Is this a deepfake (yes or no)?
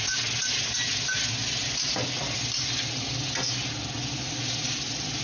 no